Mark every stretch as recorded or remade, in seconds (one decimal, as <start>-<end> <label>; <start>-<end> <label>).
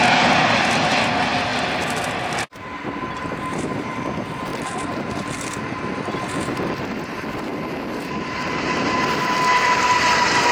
0.0-10.5 recorded